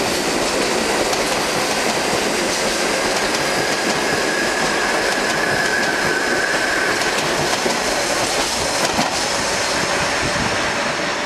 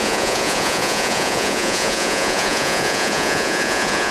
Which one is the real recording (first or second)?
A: first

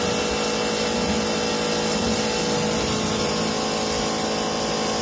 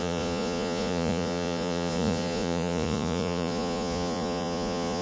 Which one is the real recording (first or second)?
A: first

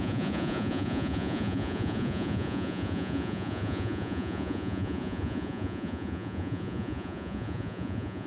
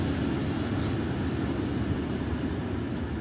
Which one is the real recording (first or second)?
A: second